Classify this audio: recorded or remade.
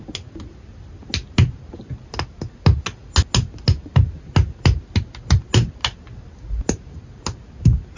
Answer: recorded